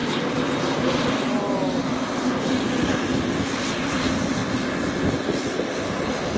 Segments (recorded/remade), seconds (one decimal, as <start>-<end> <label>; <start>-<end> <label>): 0.0-6.4 recorded